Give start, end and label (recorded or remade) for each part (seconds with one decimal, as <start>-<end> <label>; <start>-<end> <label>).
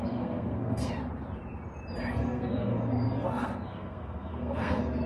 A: 0.0-0.9 remade; 0.9-2.1 recorded; 2.1-5.1 remade